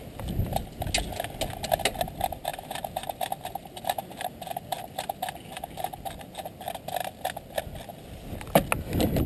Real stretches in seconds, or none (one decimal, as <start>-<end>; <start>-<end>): 0.0-2.5; 4.1-9.3